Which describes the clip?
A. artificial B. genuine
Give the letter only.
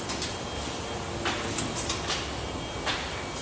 B